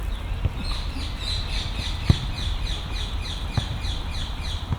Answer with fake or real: real